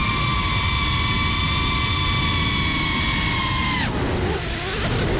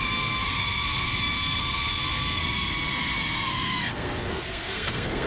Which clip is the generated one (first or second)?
second